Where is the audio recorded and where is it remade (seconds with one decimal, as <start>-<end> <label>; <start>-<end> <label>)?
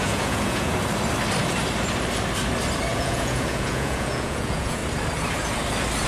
0.0-0.7 remade; 0.7-2.9 recorded; 2.9-4.8 remade; 4.8-6.1 recorded